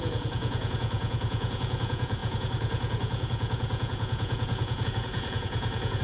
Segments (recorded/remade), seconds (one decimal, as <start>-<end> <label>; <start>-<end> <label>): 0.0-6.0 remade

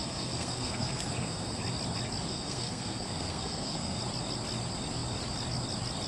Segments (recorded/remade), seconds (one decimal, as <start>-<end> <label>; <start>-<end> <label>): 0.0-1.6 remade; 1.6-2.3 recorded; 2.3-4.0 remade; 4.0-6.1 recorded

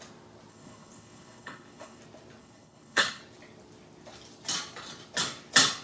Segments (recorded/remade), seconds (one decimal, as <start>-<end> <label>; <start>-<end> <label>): 0.0-0.5 recorded; 0.5-2.0 remade; 2.0-2.4 recorded; 2.4-3.2 remade; 3.2-5.8 recorded

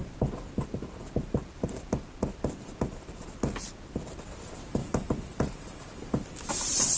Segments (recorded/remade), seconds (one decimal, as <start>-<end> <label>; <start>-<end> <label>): 0.0-4.2 remade; 4.2-4.8 recorded; 4.8-7.0 remade

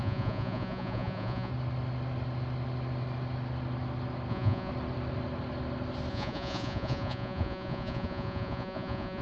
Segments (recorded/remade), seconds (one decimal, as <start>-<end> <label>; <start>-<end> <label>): 0.0-1.5 remade; 1.5-4.3 recorded; 4.3-4.7 remade; 4.7-6.1 recorded; 6.1-9.2 remade

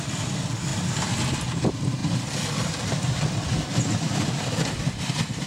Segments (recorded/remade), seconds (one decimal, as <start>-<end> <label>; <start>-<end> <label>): 0.0-0.7 remade; 0.7-1.3 recorded; 1.3-5.5 remade

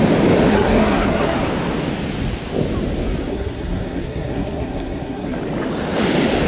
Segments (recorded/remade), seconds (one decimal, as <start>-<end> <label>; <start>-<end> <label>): 0.0-0.5 recorded; 0.5-1.4 remade; 1.4-3.3 recorded; 3.3-5.4 remade; 5.4-6.5 recorded